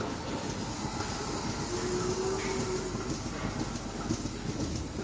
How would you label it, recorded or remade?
recorded